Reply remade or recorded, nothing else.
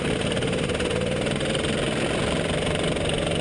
recorded